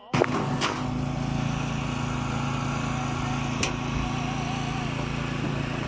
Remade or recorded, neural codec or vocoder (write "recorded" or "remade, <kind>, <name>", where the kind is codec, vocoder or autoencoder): recorded